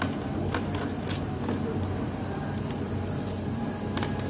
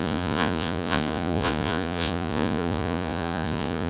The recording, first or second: first